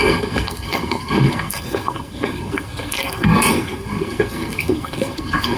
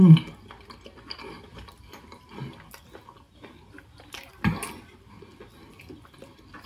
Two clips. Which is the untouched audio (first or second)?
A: second